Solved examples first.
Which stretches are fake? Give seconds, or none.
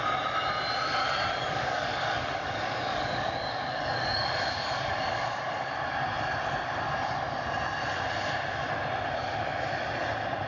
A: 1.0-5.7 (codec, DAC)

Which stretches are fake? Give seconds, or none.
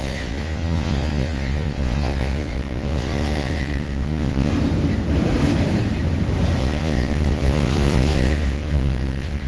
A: 0.0-4.5 (vocoder, Vocos); 6.6-9.5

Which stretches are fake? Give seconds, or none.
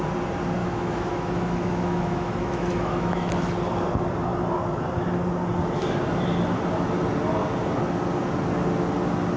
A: 0.6-3.3 (autoencoder, DAC-VAE)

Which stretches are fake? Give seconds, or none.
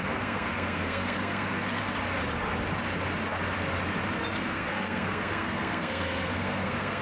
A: 0.0-1.8 (codec, SNAC); 4.4-7.0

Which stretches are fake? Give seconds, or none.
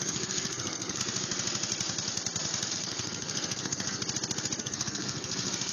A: 0.0-1.0 (codec, SNAC); 2.7-4.0; 4.6-5.7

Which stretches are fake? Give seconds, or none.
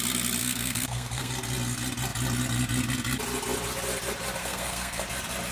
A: 0.4-1.3 (codec, SNAC); 4.4-5.0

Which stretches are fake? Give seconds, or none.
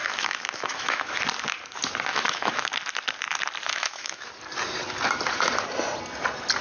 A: 0.0-1.1 (autoencoder, DAC-VAE); 2.1-2.7; 3.7-4.3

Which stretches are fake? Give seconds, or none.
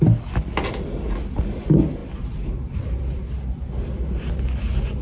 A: none